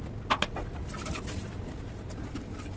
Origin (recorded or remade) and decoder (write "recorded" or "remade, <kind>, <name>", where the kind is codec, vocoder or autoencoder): recorded